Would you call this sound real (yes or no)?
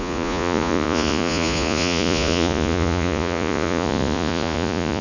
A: no